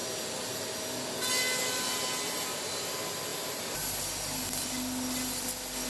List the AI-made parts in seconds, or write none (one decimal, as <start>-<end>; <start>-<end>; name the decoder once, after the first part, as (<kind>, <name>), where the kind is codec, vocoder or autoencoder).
none